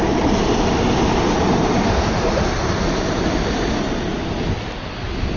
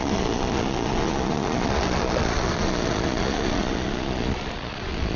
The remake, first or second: second